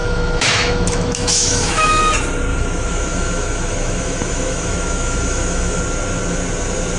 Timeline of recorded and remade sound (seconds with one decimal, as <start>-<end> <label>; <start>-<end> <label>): 0.0-2.0 remade; 2.0-2.5 recorded; 2.5-5.8 remade; 5.8-7.0 recorded